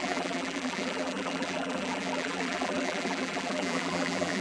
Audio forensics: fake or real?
fake